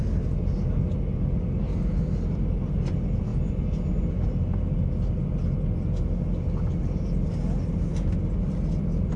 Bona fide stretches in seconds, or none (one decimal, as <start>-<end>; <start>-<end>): 0.0-9.2